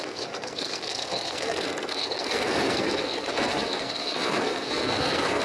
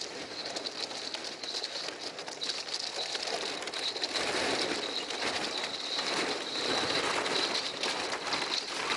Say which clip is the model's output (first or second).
first